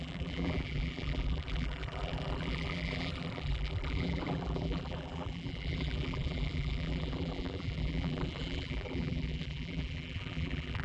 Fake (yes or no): yes